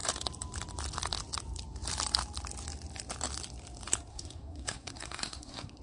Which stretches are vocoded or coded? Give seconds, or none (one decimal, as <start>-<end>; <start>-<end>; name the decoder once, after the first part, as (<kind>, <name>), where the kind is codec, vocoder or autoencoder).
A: 4.1-5.8 (codec, SNAC)